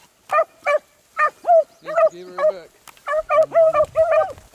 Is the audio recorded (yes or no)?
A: yes